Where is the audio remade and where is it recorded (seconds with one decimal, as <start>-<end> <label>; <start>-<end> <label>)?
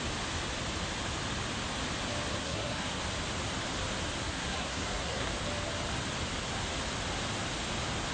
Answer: 0.0-2.4 recorded; 2.4-3.0 remade; 3.0-4.2 recorded; 4.2-5.3 remade; 5.3-8.1 recorded